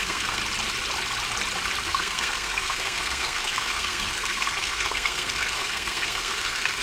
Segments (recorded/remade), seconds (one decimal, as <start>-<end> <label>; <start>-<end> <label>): 0.0-0.4 remade; 0.4-1.8 recorded; 1.8-6.8 remade